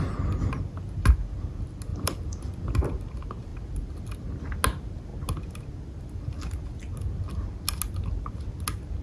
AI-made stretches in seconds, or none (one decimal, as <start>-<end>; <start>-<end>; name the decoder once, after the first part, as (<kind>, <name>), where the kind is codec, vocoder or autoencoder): none